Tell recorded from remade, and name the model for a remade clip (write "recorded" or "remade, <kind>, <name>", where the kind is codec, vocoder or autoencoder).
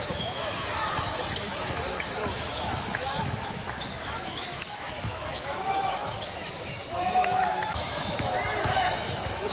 remade, autoencoder, DAC-VAE